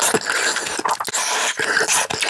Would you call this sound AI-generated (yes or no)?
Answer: no